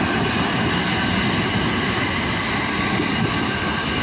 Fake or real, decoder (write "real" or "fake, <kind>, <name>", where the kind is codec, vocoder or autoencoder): real